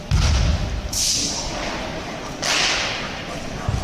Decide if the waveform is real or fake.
real